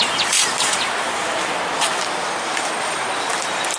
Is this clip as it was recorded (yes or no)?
no